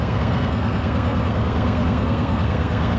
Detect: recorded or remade remade